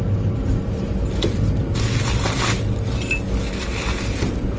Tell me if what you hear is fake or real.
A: real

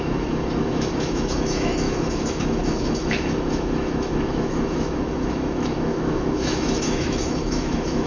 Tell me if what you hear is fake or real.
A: fake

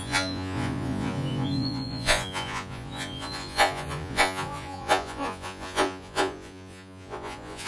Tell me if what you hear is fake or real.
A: fake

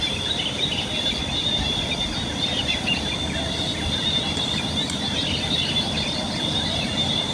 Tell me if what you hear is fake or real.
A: fake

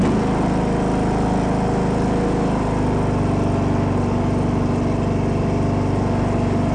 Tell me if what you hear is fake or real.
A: real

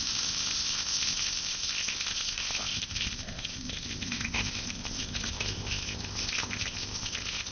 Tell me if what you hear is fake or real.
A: fake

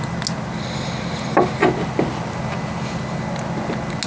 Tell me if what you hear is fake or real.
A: real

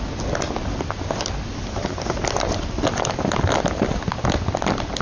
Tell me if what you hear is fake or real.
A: real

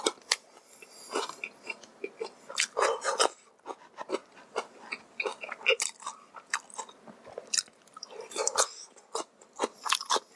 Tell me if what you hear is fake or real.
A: real